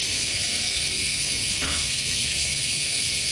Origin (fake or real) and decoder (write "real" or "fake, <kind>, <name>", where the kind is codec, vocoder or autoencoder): fake, codec, SNAC